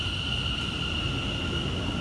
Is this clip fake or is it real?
real